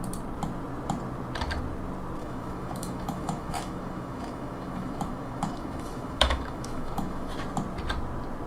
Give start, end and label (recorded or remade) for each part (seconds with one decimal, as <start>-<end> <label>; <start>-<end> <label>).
0.0-2.2 recorded; 2.2-7.3 remade; 7.3-8.5 recorded